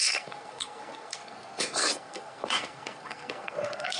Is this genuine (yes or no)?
no